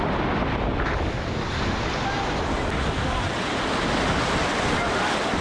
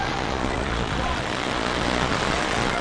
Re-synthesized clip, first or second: second